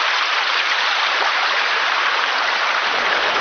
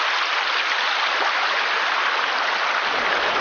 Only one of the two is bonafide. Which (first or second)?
second